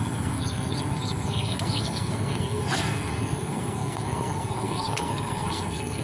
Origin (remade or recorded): remade